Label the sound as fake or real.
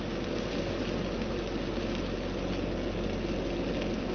real